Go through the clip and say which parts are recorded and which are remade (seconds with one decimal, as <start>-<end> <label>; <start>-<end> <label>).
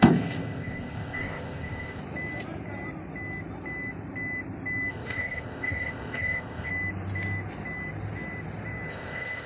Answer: 0.0-2.0 remade; 2.0-4.9 recorded; 4.9-6.7 remade; 6.7-8.9 recorded; 8.9-9.5 remade